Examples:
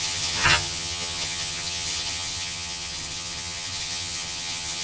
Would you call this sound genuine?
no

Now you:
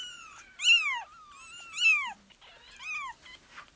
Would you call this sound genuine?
yes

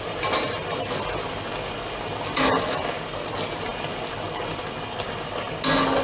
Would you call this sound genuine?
yes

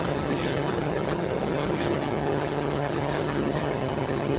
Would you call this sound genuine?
no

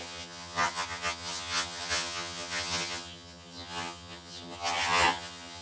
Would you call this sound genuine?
no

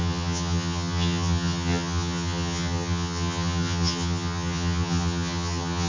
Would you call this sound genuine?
no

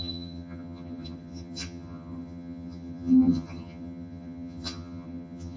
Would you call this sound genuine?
no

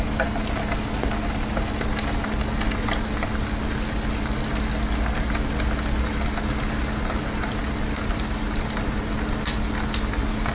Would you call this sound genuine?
yes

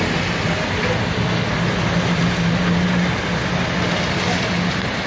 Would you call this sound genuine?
yes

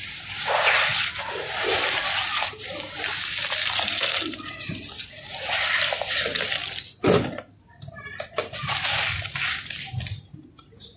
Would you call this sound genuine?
yes